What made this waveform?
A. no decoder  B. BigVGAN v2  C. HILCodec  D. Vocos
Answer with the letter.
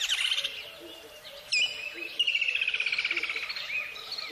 A